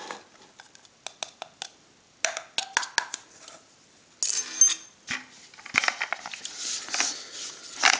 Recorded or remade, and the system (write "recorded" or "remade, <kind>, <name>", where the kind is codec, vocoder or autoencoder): recorded